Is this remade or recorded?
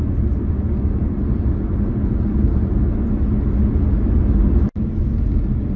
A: recorded